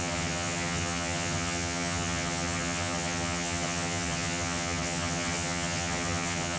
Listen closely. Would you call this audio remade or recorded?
remade